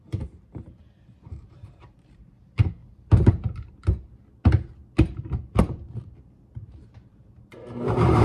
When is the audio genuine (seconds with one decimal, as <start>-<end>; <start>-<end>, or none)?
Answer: 2.8-5.6